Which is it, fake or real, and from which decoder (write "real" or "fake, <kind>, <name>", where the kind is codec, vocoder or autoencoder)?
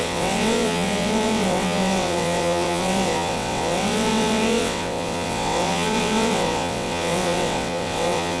fake, vocoder, WaveNeXt